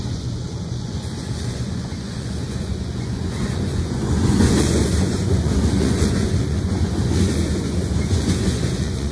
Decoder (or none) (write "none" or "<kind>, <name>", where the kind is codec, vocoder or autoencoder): vocoder, Vocos